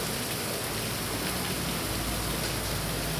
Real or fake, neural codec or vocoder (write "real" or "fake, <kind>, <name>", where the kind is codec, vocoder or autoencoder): real